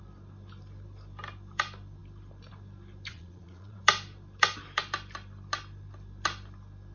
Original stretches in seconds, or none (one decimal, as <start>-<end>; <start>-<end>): 0.0-3.1; 3.8-6.9